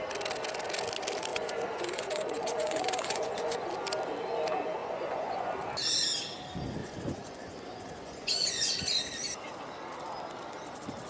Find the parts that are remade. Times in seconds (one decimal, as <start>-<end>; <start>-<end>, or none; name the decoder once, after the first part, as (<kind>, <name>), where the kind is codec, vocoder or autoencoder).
1.3-3.7 (vocoder, Vocos); 4.8-5.5; 6.8-8.7